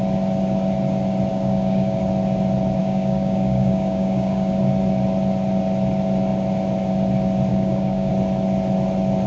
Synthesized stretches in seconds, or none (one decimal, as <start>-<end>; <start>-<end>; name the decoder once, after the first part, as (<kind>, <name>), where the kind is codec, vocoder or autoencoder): 1.3-2.0 (codec, DAC); 2.8-4.6; 7.5-8.1